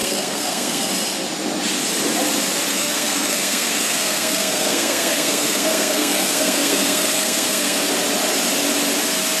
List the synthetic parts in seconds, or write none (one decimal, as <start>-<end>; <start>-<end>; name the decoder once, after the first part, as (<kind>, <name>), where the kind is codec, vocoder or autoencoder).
0.0-0.9 (codec, SNAC); 2.7-7.9